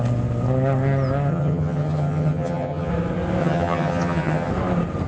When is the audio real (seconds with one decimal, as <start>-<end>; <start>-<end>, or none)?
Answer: 0.0-1.3; 2.9-3.4; 4.5-5.1